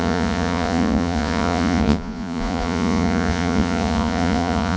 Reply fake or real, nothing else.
fake